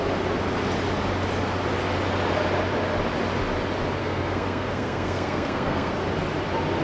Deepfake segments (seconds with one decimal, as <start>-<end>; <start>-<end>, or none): 4.0-5.9